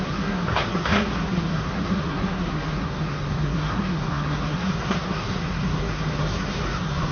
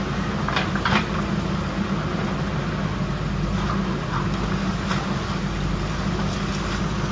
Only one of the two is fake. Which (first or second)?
first